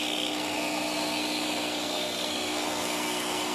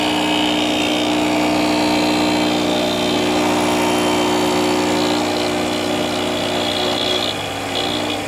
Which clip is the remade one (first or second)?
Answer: first